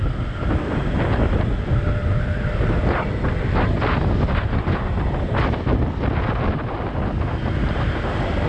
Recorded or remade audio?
recorded